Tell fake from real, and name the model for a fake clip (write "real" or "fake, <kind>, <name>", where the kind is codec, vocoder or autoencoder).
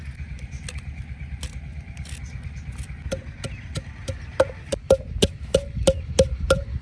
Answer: real